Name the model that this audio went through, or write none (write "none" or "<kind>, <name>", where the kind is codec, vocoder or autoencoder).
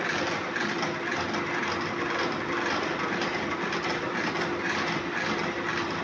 none